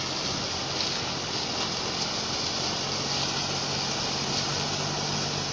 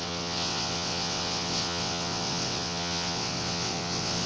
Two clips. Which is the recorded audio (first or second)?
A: first